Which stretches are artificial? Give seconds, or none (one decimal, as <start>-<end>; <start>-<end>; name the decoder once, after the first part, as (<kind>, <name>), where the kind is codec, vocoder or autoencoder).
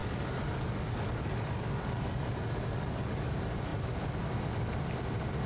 0.0-3.3 (codec, DAC)